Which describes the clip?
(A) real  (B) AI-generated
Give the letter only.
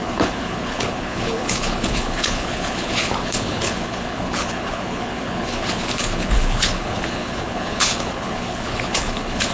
B